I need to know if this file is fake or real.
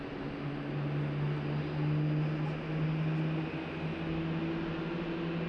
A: real